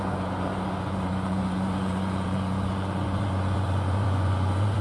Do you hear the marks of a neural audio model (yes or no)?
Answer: yes